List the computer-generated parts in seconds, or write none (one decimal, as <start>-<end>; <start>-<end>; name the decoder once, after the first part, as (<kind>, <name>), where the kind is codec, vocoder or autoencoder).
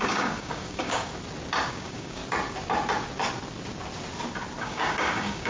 0.0-1.1 (codec, DAC); 1.7-2.2; 4.6-5.5